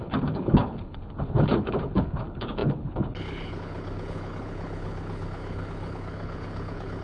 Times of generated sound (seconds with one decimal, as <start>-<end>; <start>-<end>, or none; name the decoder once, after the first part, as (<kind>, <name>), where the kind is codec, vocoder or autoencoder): 0.0-7.0 (codec, HILCodec)